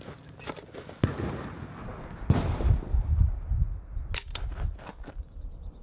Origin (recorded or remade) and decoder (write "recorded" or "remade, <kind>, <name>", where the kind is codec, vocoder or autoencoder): recorded